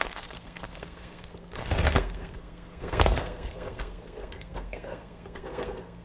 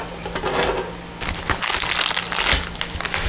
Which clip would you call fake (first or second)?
first